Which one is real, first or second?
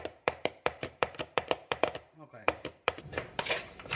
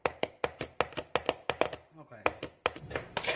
second